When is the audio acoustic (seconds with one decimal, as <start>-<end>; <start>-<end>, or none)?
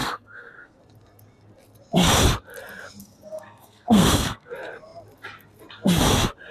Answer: 0.8-3.0; 4.5-6.5